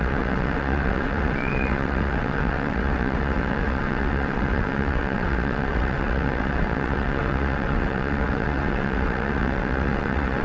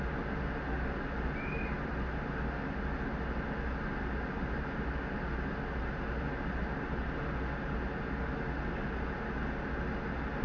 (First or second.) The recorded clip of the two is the second